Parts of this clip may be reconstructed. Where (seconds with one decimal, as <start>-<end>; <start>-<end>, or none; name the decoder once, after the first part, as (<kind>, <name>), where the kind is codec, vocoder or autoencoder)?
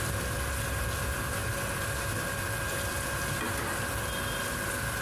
none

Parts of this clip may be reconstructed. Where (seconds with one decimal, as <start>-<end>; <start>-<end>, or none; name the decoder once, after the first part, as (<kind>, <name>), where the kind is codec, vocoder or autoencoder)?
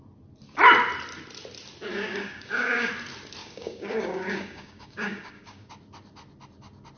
1.9-2.9 (codec, DAC); 3.4-5.7